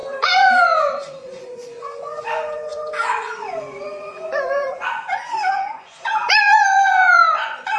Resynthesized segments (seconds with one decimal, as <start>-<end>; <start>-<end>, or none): 0.0-7.8